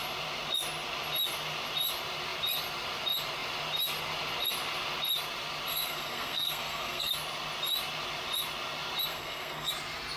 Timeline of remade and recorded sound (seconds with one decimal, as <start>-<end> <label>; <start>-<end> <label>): 0.0-5.7 recorded; 5.7-7.1 remade; 7.1-9.1 recorded; 9.1-9.7 remade; 9.7-10.2 recorded